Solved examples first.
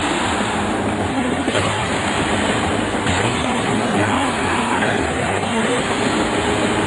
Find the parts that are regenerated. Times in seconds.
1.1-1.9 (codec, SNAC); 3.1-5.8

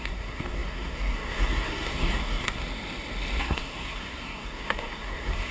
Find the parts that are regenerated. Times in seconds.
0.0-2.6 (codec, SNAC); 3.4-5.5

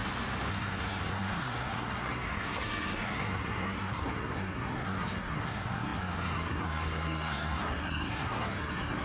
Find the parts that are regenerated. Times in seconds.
0.5-9.0 (codec, SNAC)